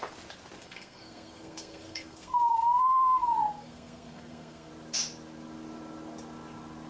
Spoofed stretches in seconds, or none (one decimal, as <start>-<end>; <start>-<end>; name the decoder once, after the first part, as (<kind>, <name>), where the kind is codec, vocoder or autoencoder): 0.6-4.7 (codec, SNAC)